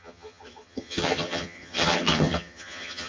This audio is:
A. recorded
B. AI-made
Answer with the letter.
B